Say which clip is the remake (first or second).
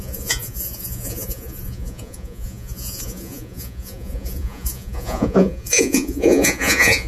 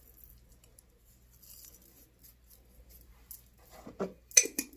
first